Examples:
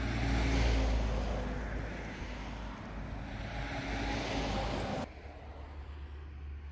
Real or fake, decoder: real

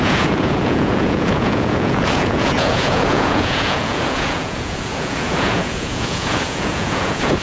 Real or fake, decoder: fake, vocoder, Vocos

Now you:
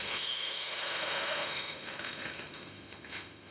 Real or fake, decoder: fake, autoencoder, DAC-VAE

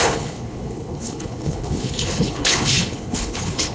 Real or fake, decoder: fake, codec, HILCodec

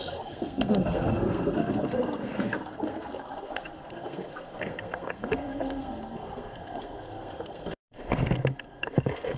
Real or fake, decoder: fake, codec, SNAC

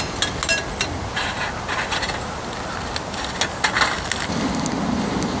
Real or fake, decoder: real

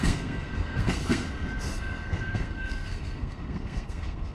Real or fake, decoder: fake, codec, SNAC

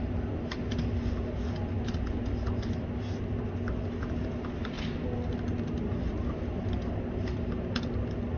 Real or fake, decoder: real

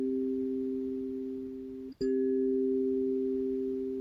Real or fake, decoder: real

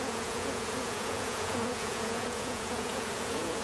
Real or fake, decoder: fake, vocoder, Vocos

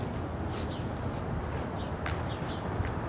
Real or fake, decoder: real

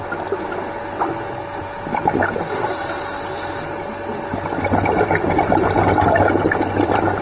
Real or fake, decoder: real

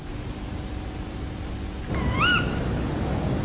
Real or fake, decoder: real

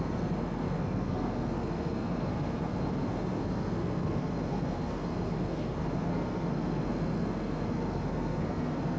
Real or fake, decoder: fake, codec, SNAC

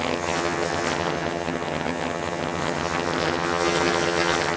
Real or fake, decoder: fake, vocoder, HiFi-GAN